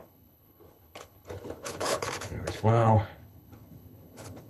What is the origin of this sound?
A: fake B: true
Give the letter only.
A